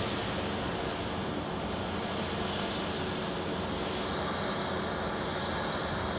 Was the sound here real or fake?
real